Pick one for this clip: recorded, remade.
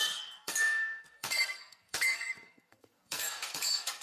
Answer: remade